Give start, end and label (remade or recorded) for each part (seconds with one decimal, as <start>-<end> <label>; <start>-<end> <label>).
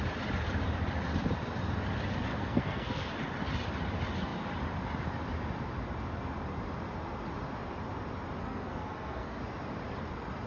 0.0-2.3 recorded; 2.3-3.1 remade; 3.1-8.4 recorded; 8.4-9.4 remade; 9.4-10.5 recorded